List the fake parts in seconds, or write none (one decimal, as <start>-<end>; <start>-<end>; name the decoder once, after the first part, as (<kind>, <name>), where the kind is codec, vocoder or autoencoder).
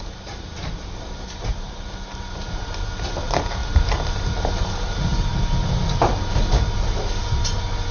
0.0-3.6 (vocoder, BigVGAN v2); 4.6-5.3